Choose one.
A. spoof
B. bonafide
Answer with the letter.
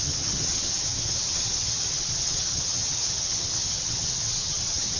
A